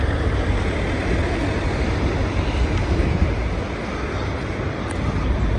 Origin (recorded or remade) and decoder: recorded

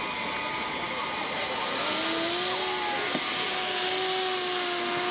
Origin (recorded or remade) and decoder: recorded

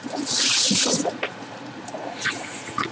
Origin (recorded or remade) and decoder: remade, vocoder, Vocos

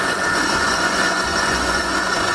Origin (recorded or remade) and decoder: remade, vocoder, Vocos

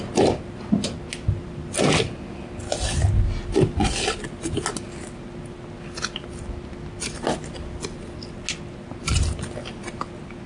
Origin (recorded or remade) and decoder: recorded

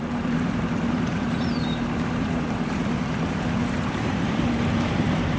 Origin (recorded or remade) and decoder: remade, vocoder, BigVGAN v2